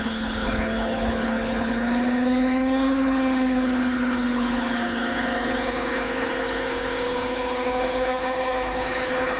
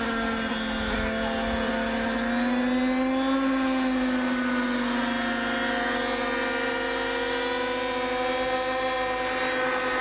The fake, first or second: first